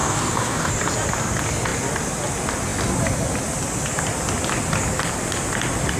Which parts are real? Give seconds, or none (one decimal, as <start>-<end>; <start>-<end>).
0.7-6.0